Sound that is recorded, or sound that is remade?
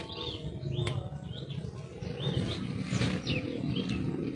recorded